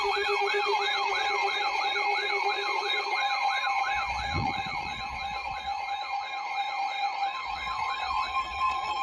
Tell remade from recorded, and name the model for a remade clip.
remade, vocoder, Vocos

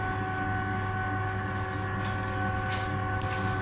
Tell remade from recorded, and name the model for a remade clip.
recorded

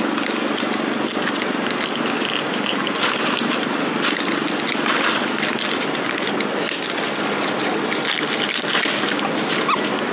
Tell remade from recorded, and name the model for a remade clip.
recorded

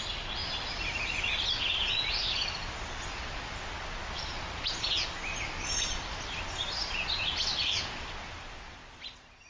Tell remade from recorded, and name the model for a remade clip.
recorded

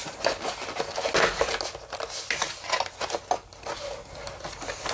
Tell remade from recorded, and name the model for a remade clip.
recorded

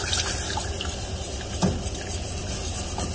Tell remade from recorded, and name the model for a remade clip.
recorded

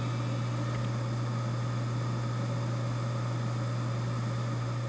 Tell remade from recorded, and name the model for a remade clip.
recorded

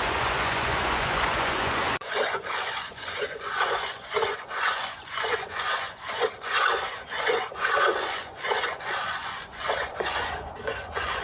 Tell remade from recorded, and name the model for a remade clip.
remade, vocoder, Vocos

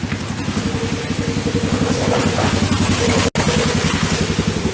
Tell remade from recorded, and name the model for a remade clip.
recorded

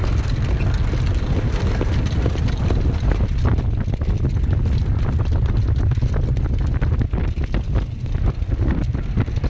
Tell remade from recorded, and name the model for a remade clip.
recorded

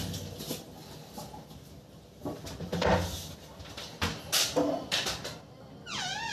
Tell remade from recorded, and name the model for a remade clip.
recorded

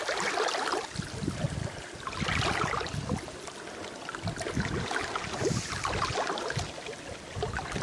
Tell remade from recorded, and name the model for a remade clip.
recorded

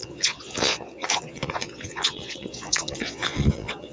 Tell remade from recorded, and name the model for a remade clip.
remade, vocoder, Vocos